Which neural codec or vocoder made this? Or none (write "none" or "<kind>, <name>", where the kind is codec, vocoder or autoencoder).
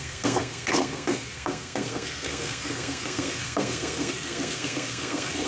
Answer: codec, SNAC